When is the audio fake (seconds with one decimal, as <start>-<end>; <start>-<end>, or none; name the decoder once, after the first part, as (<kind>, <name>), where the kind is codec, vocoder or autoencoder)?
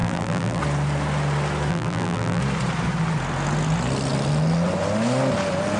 0.0-0.6 (vocoder, BigVGAN v2); 1.7-2.4